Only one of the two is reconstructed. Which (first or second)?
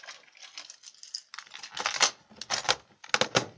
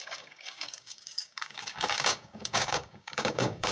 second